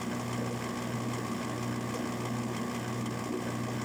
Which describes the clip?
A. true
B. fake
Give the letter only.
A